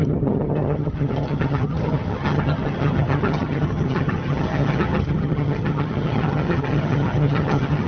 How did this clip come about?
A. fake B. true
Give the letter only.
A